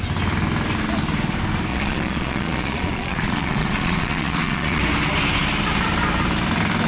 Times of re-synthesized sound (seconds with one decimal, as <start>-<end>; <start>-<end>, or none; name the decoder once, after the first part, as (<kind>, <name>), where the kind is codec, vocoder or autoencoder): 1.7-4.8 (vocoder, Vocos)